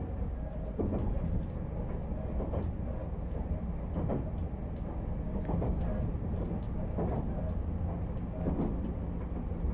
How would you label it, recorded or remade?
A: recorded